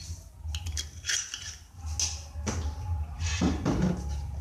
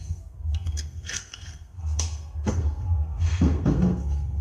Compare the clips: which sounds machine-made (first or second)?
second